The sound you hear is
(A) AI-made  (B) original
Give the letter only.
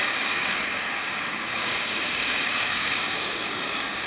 A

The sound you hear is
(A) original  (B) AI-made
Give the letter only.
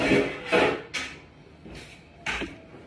A